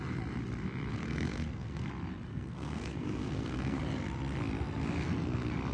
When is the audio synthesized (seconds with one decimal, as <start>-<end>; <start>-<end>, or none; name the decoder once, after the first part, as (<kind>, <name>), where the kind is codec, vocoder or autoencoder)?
0.9-1.9 (codec, SNAC); 2.3-3.8